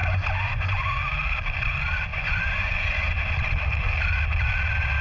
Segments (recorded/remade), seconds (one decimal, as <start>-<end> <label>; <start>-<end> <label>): 0.0-1.0 remade; 1.0-2.1 recorded; 2.1-3.3 remade; 3.3-5.0 recorded